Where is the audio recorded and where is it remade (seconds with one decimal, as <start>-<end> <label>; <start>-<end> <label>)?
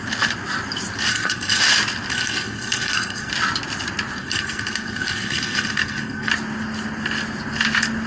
0.0-1.1 recorded; 1.1-1.6 remade; 1.6-2.1 recorded; 2.1-3.3 remade; 3.3-4.2 recorded; 4.2-6.3 remade; 6.3-8.1 recorded